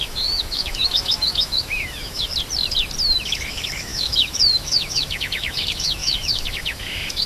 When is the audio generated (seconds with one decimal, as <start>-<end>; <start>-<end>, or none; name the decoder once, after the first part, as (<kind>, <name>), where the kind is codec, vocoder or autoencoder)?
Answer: 0.0-2.3 (autoencoder, DAC-VAE); 3.2-7.3